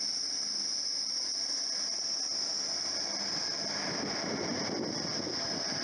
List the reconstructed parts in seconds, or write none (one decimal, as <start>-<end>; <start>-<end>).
1.3-2.0